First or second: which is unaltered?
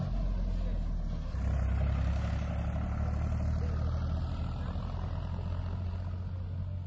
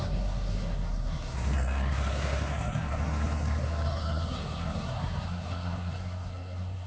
first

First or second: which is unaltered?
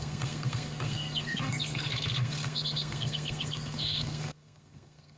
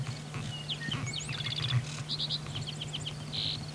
second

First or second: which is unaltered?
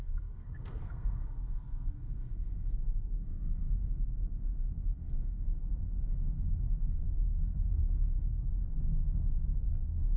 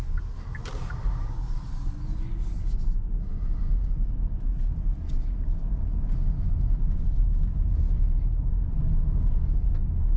second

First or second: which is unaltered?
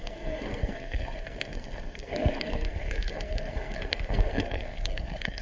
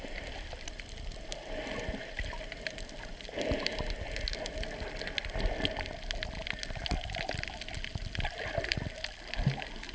second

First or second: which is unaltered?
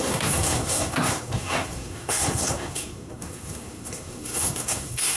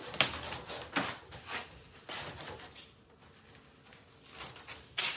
second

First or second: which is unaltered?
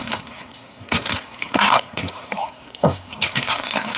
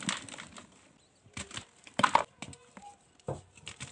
second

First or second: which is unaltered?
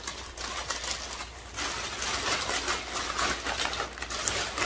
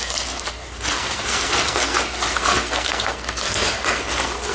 first